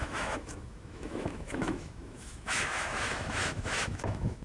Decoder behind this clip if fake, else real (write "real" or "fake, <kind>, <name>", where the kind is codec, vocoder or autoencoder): fake, autoencoder, DAC-VAE